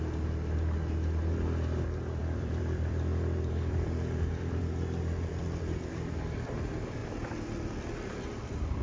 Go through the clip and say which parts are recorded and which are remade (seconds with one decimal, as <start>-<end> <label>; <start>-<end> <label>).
0.0-2.2 recorded; 2.2-4.6 remade; 4.6-8.8 recorded